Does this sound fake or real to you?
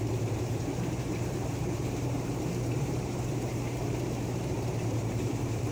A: fake